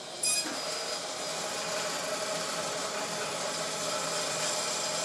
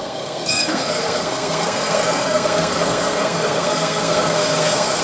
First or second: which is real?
first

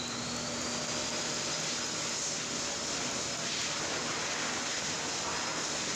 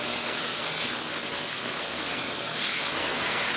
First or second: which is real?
first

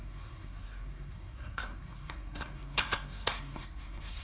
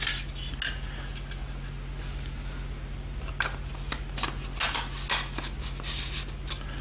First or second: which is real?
second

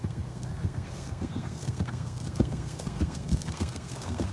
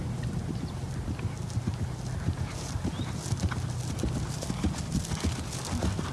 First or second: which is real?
second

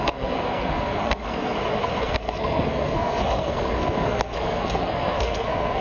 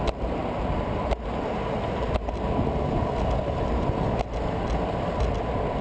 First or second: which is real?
second